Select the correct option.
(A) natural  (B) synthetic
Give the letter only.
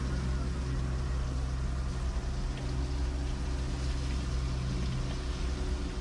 A